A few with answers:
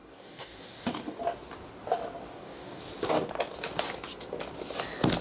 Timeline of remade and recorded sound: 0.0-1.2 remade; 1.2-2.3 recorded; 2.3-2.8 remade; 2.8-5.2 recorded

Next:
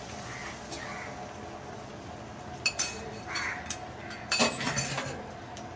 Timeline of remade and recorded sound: 0.0-5.8 recorded

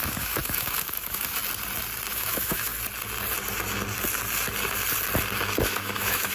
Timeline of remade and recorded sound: 0.0-1.4 remade; 1.4-2.1 recorded; 2.1-2.7 remade; 2.7-5.6 recorded; 5.6-6.3 remade

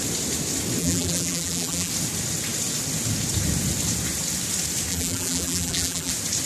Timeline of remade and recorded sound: 0.0-0.8 recorded; 0.8-1.9 remade; 1.9-4.9 recorded; 4.9-6.1 remade; 6.1-6.5 recorded

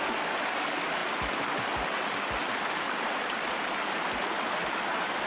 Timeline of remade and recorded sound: 0.0-5.3 recorded

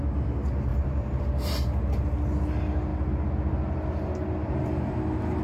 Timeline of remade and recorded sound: 0.0-0.7 recorded; 0.7-1.2 remade; 1.2-4.4 recorded; 4.4-4.9 remade; 4.9-5.4 recorded

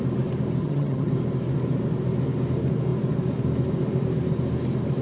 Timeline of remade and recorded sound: 0.0-0.6 recorded; 0.6-1.1 remade; 1.1-5.0 recorded

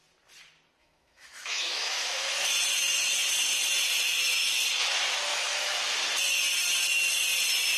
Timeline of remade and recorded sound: 0.0-0.8 recorded; 0.8-2.5 remade; 2.5-5.3 recorded; 5.3-5.8 remade; 5.8-7.8 recorded